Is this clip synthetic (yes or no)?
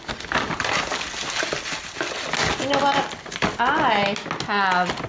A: no